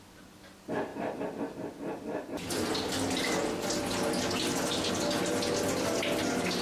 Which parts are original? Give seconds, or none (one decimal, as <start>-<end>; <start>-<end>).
0.0-6.6